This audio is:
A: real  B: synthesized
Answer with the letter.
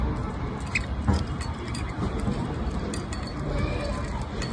A